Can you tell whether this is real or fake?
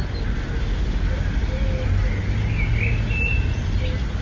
real